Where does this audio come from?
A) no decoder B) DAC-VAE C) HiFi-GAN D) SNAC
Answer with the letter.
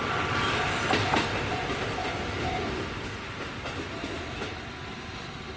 A